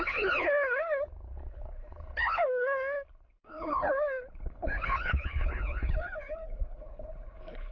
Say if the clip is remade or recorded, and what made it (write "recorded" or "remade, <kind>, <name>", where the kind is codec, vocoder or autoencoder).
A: remade, codec, HILCodec